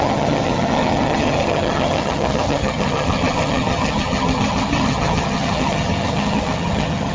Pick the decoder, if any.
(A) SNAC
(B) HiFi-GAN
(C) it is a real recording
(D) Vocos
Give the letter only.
B